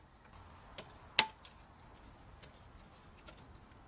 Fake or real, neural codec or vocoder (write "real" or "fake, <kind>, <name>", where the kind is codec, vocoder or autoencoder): real